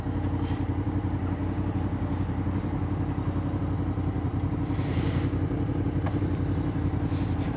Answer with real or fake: real